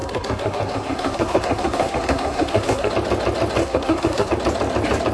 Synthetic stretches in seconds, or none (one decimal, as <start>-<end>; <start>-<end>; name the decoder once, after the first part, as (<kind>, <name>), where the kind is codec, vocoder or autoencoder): 0.0-2.9 (codec, SNAC); 3.6-4.3